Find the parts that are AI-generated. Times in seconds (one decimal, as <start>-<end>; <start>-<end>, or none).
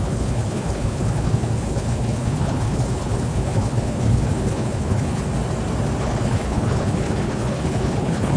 0.0-5.2; 6.0-8.4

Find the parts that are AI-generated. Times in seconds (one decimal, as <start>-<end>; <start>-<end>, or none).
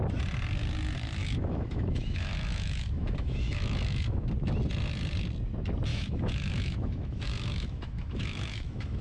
1.2-4.3; 5.9-9.0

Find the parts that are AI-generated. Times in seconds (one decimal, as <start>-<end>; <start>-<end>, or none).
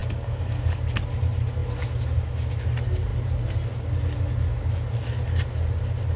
0.0-0.9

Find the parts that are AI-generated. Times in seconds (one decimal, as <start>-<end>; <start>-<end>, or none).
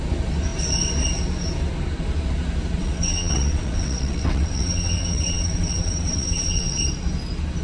2.8-6.8